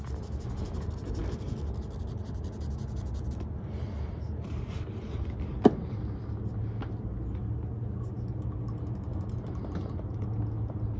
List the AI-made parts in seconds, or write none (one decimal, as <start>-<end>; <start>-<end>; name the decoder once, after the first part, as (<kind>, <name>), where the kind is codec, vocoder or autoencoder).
none